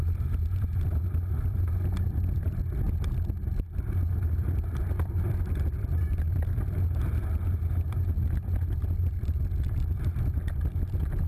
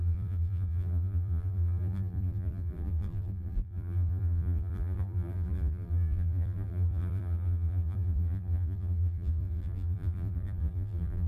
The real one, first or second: first